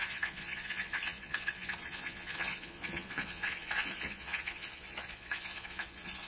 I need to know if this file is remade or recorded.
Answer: remade